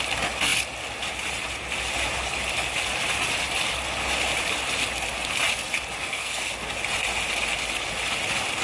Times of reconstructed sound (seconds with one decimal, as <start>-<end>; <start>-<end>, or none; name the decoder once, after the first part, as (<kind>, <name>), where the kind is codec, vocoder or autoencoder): 6.0-6.7 (codec, SNAC)